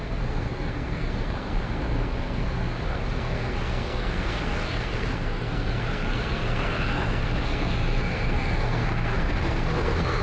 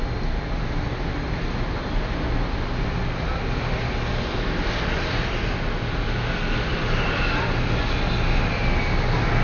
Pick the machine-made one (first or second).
first